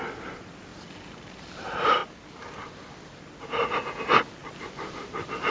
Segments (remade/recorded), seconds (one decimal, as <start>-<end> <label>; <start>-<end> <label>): 0.0-0.7 remade; 0.7-1.4 recorded; 1.4-2.0 remade; 2.0-3.4 recorded; 3.4-5.5 remade